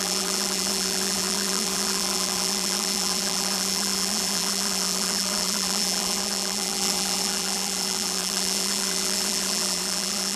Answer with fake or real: fake